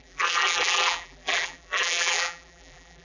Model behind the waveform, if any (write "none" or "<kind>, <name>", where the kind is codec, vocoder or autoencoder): vocoder, BigVGAN v2